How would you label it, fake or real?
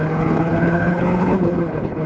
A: fake